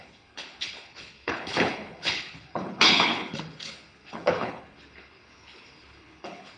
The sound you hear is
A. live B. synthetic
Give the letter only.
B